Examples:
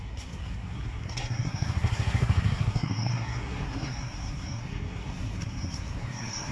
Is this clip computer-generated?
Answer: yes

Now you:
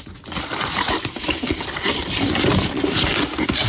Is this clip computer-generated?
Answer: no